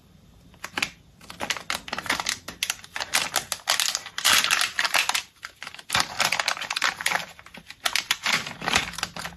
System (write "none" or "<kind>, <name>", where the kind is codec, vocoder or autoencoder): none